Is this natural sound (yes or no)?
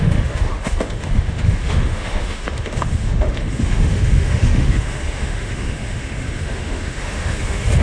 no